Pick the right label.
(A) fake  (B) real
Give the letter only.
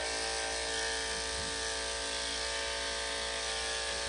B